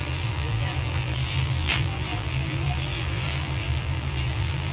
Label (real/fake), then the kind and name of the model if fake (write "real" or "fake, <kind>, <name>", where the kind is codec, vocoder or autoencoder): fake, vocoder, BigVGAN v2